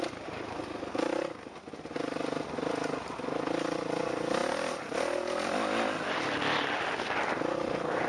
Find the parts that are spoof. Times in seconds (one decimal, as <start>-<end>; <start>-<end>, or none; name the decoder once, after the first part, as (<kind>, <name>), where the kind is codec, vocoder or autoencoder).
none